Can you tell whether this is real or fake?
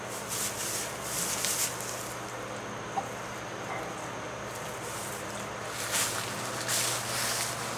real